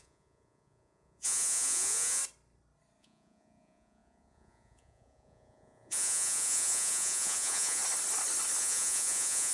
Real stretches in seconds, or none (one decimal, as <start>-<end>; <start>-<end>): 2.2-3.0; 7.8-8.6

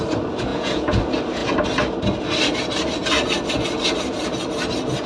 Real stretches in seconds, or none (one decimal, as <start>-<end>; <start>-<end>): 0.0-0.5; 1.0-5.1

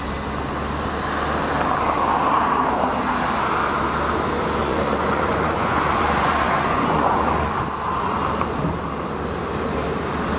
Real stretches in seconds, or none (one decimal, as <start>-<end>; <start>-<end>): 0.0-4.6; 7.5-10.4

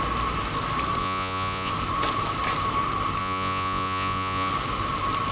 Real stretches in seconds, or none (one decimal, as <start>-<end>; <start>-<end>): 0.0-1.0; 1.7-3.2; 4.5-5.3

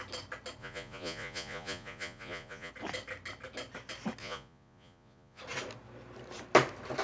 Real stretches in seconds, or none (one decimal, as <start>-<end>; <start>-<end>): 0.0-0.6; 2.7-4.2; 5.4-7.0

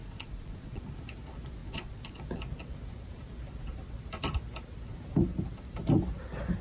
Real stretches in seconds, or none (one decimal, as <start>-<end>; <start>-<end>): 0.8-1.6; 2.2-6.6

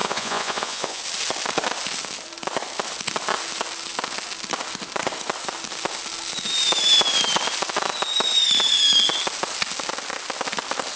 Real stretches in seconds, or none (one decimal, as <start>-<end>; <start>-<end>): 1.0-11.0

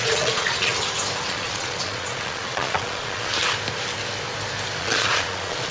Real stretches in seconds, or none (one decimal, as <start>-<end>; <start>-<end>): 0.8-1.3; 3.3-4.8